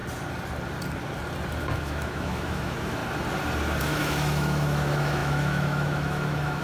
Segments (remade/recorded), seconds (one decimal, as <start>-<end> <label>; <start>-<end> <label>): 0.0-1.6 recorded; 1.6-3.0 remade; 3.0-3.8 recorded; 3.8-6.6 remade